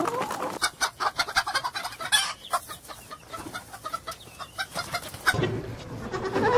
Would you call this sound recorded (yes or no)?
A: yes